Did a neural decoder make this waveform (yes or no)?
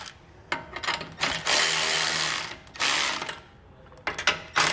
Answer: no